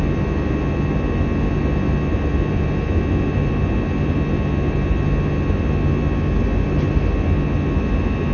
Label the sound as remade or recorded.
recorded